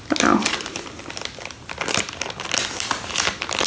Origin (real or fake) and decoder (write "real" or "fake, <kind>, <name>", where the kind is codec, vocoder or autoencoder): real